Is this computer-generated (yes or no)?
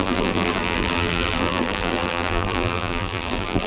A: yes